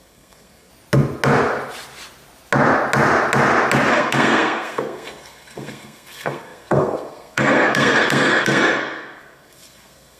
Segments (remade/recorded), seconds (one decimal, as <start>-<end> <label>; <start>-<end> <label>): 0.0-0.7 remade; 0.7-3.9 recorded; 3.9-10.2 remade